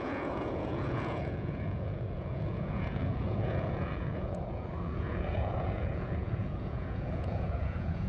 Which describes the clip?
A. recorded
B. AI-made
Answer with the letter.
B